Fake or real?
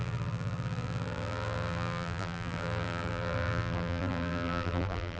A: fake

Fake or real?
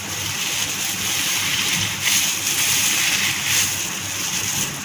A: real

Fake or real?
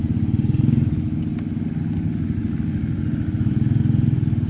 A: real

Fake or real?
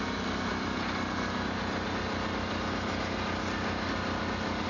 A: real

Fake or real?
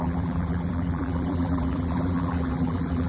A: fake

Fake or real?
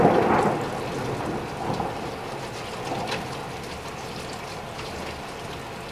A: real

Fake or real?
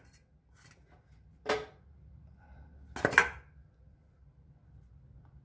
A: real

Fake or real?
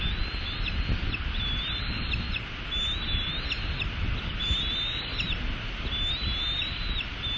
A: real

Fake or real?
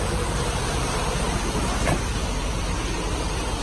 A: fake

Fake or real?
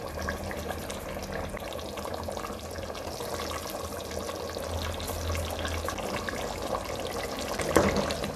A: real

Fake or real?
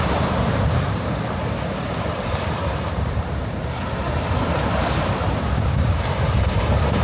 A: fake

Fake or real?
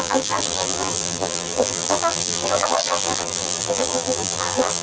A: fake